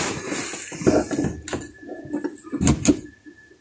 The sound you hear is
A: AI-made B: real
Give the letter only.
B